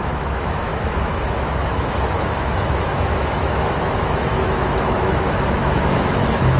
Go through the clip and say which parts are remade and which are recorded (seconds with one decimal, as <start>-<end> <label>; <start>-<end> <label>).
0.0-6.6 remade